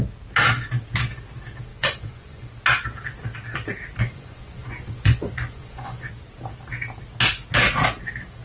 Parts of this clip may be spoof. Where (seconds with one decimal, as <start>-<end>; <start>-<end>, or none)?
1.7-2.5; 4.0-6.1